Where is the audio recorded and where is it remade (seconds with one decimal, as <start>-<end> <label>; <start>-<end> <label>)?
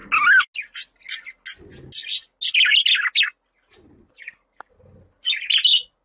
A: 0.0-6.0 recorded